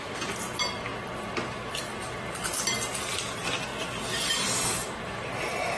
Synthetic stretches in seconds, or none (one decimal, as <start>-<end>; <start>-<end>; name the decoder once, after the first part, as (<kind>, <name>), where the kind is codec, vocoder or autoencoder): 0.0-0.9 (vocoder, BigVGAN v2); 3.1-5.8